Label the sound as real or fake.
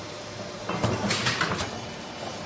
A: real